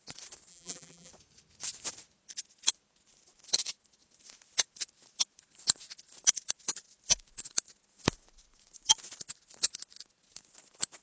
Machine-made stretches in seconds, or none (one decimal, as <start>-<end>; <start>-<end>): 0.5-1.1